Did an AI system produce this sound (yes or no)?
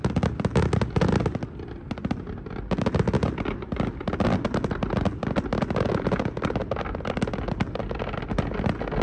no